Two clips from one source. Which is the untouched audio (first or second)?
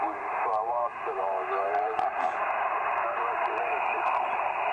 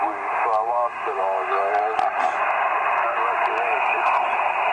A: second